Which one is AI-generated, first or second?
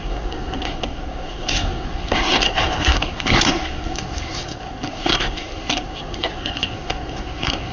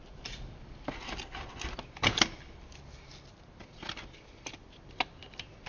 first